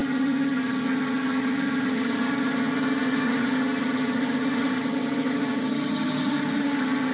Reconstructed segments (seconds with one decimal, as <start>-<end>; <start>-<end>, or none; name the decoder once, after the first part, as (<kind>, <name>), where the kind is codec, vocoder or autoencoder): 0.0-7.1 (vocoder, HiFi-GAN)